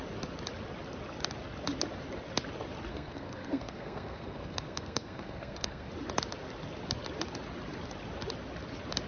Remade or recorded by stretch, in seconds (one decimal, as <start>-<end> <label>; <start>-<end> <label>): 0.0-2.9 recorded; 2.9-5.9 remade; 5.9-9.1 recorded